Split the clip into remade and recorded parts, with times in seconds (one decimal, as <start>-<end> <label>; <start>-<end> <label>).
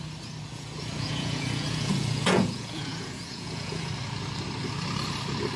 0.0-0.5 recorded; 0.5-3.9 remade; 3.9-5.6 recorded